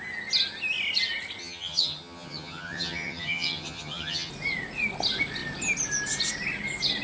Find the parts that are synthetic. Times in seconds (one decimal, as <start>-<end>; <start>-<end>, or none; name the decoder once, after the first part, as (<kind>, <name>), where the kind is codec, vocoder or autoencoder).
1.4-4.3 (vocoder, HiFi-GAN)